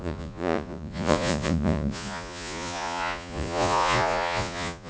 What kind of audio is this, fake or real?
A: fake